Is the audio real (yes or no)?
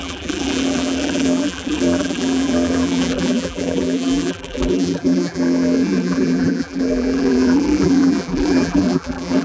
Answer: no